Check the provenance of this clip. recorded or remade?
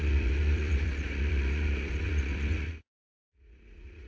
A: remade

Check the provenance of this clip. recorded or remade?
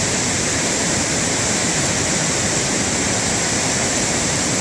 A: remade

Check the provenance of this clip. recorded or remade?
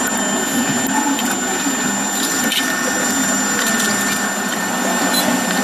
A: recorded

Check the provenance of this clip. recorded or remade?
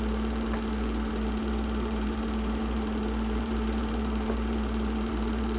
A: remade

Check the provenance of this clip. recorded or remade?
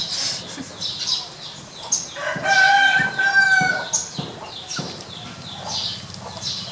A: recorded